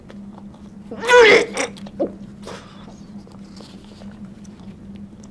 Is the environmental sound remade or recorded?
recorded